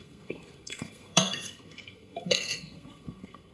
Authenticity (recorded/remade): remade